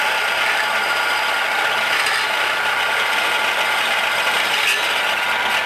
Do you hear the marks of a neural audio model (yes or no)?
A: no